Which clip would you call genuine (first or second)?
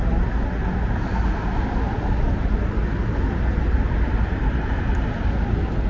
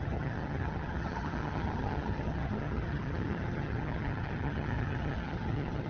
first